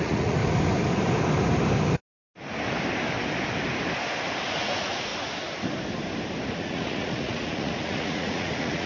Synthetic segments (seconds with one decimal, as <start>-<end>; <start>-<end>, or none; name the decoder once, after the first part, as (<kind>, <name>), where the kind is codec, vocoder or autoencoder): 0.0-0.4 (vocoder, Vocos); 4.5-5.1; 6.5-8.9